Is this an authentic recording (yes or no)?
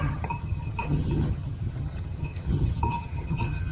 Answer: no